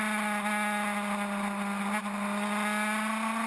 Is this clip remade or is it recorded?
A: recorded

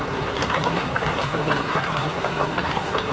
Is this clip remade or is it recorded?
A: remade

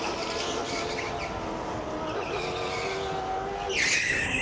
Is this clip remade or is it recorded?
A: recorded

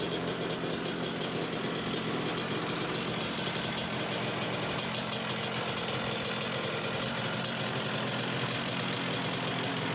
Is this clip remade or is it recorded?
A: recorded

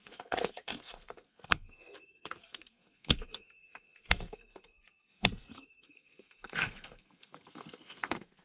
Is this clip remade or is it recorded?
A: remade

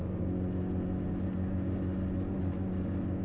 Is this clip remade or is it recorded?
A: recorded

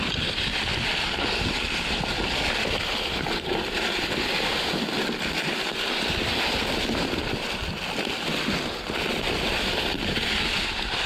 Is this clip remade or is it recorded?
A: recorded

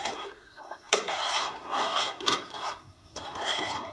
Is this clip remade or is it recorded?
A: remade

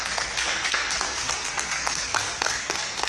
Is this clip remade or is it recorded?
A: remade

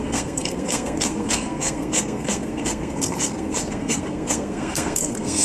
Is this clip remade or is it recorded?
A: remade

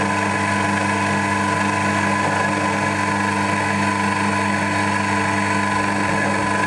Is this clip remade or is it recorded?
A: recorded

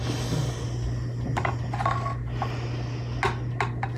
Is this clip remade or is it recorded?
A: recorded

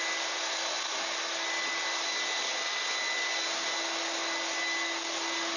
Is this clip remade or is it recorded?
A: recorded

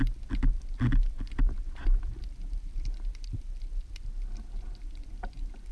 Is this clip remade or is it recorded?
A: recorded